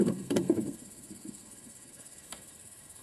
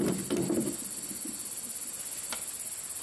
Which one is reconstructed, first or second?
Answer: first